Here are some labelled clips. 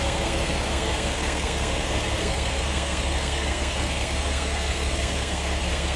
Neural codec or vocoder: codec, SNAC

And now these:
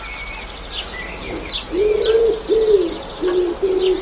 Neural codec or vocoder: none